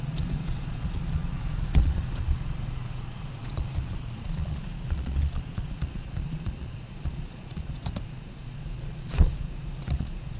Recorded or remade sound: remade